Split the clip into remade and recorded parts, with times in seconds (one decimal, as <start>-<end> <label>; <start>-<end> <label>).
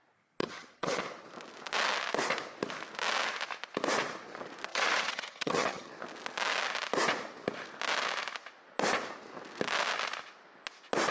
0.0-0.4 recorded; 0.4-1.0 remade; 1.0-4.7 recorded; 4.7-5.9 remade; 5.9-11.1 recorded